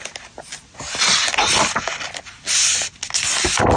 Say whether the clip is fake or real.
real